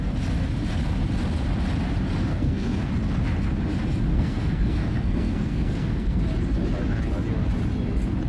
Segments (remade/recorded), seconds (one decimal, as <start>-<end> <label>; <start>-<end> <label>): 0.0-2.3 recorded; 2.3-2.9 remade; 2.9-4.1 recorded; 4.1-6.2 remade; 6.2-8.3 recorded